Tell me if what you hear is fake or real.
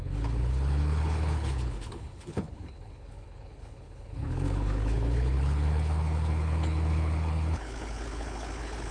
fake